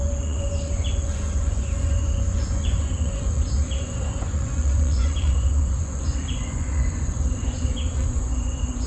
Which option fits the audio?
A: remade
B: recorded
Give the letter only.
A